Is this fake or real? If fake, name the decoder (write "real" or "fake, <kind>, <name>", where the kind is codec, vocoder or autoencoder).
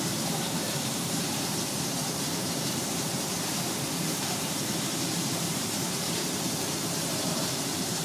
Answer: fake, vocoder, BigVGAN v2